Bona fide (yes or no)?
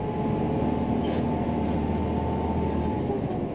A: yes